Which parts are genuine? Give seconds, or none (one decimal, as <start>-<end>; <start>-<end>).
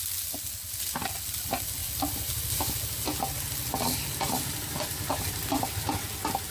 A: 0.0-6.5